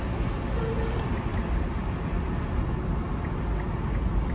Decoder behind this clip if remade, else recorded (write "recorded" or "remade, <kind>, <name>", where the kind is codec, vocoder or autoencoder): recorded